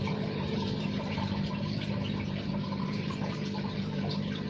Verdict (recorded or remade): remade